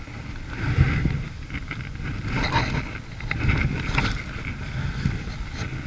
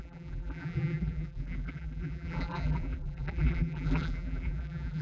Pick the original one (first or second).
first